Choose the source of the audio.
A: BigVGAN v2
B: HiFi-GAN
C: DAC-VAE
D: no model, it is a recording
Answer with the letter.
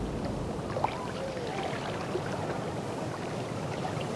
D